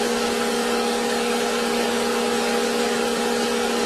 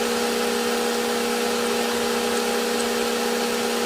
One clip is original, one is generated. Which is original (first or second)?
second